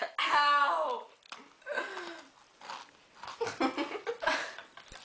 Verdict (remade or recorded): recorded